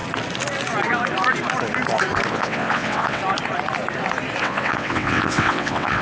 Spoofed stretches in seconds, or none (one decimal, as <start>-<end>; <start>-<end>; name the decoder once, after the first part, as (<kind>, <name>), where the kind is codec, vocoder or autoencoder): 2.3-3.2 (vocoder, WaveNeXt); 4.4-6.0